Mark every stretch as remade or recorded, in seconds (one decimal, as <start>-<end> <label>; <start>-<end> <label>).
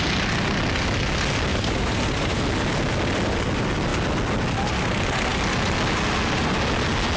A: 0.0-1.5 recorded; 1.5-2.4 remade; 2.4-7.2 recorded